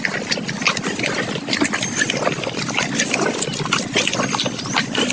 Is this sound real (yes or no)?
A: yes